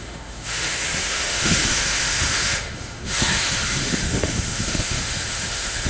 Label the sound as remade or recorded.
remade